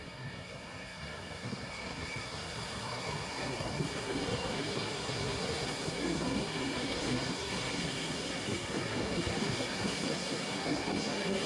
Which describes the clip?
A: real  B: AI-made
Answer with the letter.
B